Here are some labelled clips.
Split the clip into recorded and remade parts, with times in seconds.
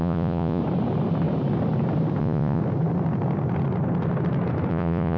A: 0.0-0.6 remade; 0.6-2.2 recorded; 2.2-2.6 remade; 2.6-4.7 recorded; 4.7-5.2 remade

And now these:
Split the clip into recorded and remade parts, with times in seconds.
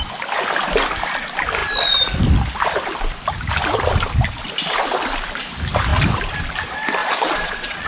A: 0.0-7.0 recorded; 7.0-7.9 remade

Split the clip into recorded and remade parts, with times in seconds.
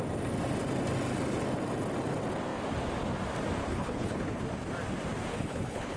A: 0.0-3.6 recorded; 3.6-4.4 remade; 4.4-5.3 recorded; 5.3-6.0 remade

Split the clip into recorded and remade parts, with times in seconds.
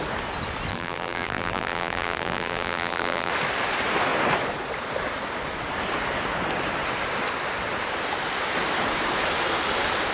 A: 0.0-0.7 recorded; 0.7-3.3 remade; 3.3-10.1 recorded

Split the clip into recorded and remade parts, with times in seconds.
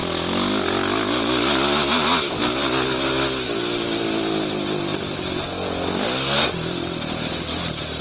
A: 0.0-8.0 recorded